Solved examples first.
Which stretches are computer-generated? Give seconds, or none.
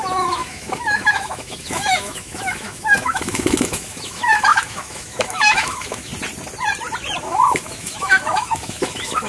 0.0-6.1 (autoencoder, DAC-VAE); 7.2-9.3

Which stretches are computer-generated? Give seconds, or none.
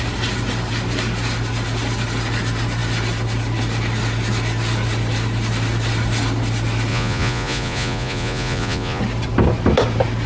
6.9-9.0 (vocoder, Vocos)